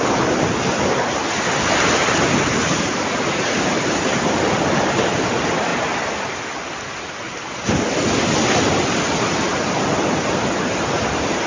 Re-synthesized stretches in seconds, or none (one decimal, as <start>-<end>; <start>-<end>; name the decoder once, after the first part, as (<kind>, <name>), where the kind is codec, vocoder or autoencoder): none